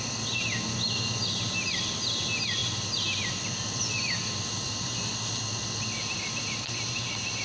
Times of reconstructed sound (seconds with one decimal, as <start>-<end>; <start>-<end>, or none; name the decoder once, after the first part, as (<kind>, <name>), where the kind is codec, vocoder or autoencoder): none